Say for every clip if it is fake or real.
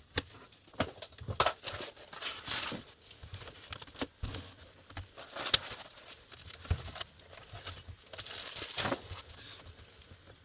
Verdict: real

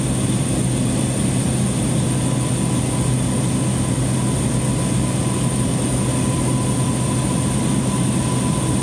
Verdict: real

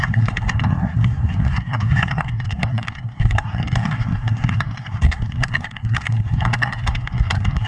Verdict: fake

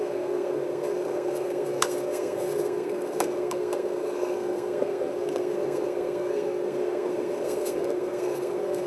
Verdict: fake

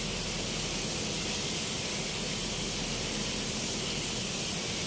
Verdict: real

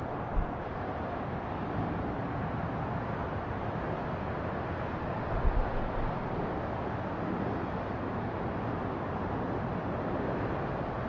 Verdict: real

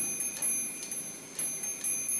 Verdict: real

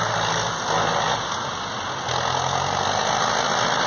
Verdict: real